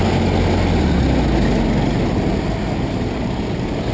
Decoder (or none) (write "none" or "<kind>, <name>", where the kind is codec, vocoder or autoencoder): none